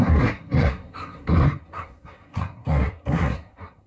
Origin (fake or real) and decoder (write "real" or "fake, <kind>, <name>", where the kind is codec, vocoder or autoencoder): fake, codec, SNAC